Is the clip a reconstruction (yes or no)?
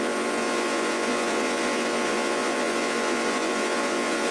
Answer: yes